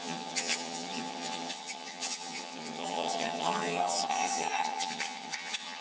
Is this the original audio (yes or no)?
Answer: no